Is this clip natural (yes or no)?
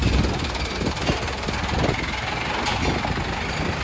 yes